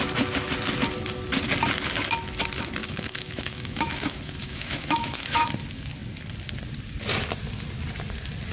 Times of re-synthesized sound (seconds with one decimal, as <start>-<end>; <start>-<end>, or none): 2.8-5.5